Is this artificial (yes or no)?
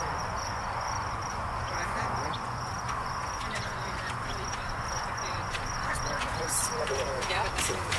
yes